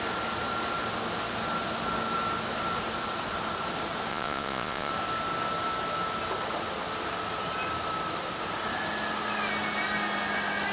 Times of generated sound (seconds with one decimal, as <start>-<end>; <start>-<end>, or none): 4.1-4.9